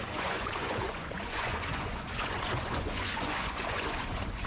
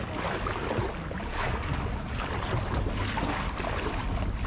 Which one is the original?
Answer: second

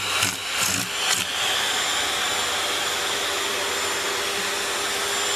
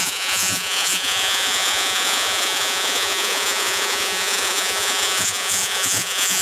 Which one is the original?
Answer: first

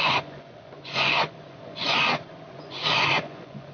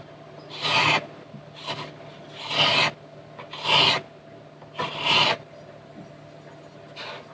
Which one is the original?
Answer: second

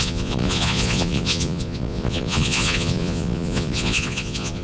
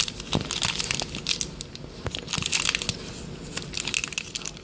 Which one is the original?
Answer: second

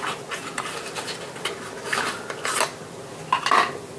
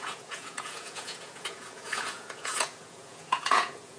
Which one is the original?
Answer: first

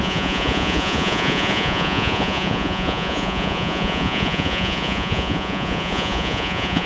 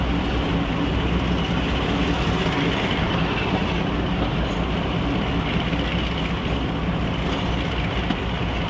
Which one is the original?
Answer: second